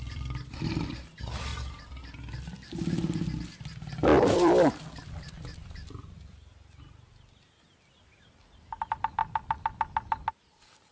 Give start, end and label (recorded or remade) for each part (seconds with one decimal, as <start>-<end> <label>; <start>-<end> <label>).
0.0-0.8 remade; 0.8-1.5 recorded; 1.5-2.0 remade; 2.0-4.1 recorded; 4.1-8.0 remade; 8.0-10.9 recorded